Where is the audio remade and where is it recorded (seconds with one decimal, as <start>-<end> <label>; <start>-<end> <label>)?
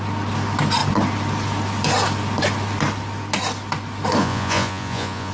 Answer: 0.0-4.2 recorded; 4.2-5.3 remade